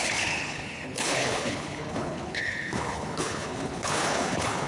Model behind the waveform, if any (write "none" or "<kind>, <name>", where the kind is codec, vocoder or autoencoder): codec, HILCodec